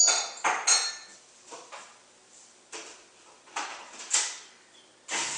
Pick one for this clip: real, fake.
real